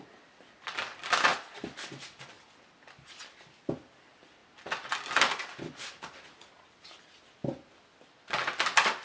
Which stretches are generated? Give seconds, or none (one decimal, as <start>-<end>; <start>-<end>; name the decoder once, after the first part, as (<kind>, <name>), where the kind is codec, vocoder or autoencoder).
none